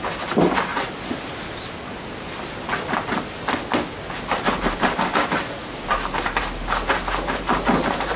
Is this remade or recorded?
recorded